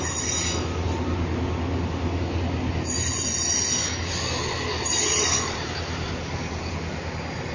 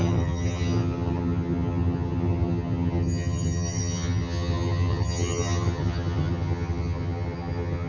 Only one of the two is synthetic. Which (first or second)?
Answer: second